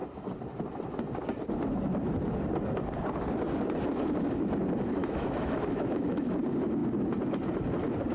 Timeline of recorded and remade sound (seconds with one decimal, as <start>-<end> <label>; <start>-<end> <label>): 0.0-5.0 recorded; 5.0-6.3 remade; 6.3-8.1 recorded